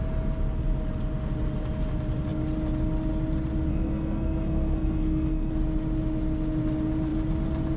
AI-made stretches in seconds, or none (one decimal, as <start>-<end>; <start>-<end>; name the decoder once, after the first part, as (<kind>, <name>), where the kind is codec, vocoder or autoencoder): 3.7-5.5 (codec, SNAC)